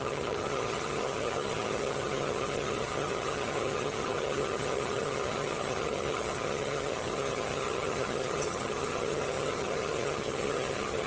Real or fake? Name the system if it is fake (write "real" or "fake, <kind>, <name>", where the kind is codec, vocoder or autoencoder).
fake, vocoder, HiFi-GAN